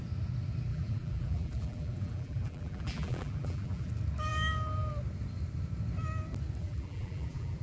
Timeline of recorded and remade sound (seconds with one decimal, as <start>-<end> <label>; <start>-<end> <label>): 0.0-0.7 recorded; 0.7-3.9 remade; 3.9-6.6 recorded; 6.6-7.6 remade